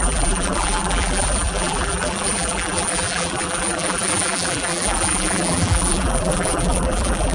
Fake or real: fake